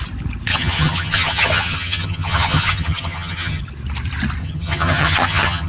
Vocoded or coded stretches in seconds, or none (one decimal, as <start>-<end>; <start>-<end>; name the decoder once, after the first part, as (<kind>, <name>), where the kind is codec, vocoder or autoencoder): 0.5-3.6 (vocoder, HiFi-GAN); 4.4-5.7